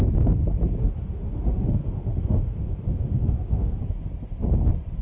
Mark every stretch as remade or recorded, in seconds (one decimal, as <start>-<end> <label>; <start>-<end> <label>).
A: 0.0-0.8 recorded; 0.8-3.8 remade; 3.8-5.0 recorded